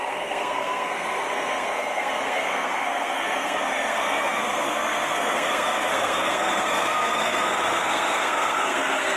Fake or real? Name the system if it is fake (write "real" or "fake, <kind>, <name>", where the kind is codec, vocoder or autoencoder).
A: fake, codec, SNAC